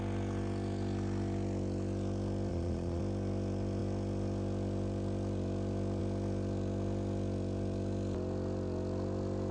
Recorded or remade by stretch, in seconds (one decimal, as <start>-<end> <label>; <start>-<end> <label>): 0.0-2.5 recorded; 2.5-3.0 remade; 3.0-9.5 recorded

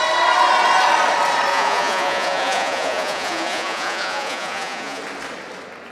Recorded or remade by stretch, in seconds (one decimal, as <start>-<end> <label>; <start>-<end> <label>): 0.0-1.5 recorded; 1.5-5.0 remade; 5.0-5.9 recorded